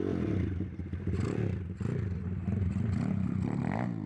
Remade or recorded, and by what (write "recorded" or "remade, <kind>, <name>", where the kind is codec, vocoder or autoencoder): recorded